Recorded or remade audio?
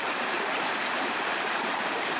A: remade